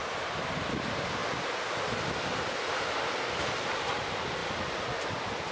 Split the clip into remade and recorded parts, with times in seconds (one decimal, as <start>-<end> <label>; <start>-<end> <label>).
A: 0.0-1.2 remade; 1.2-2.4 recorded; 2.4-4.4 remade; 4.4-5.5 recorded